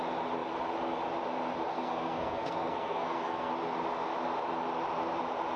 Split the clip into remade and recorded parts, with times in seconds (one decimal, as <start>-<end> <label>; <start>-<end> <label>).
0.0-1.7 recorded; 1.7-3.5 remade; 3.5-5.6 recorded